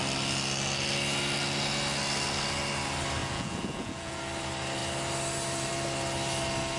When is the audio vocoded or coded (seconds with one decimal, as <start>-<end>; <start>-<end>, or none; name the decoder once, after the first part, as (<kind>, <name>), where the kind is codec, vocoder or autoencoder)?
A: 3.2-4.2 (vocoder, Vocos)